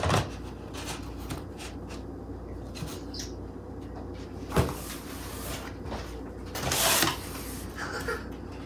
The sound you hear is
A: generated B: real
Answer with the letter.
B